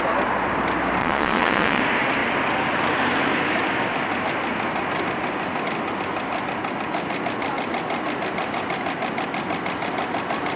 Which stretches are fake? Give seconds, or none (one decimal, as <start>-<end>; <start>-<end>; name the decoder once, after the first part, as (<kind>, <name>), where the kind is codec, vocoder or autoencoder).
1.0-1.8 (vocoder, Vocos)